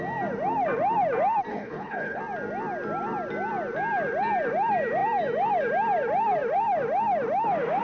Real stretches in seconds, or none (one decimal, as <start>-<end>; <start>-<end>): 0.0-1.5; 2.2-7.8